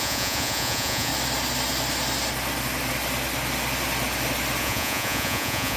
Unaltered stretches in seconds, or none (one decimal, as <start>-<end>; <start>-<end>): 1.1-4.6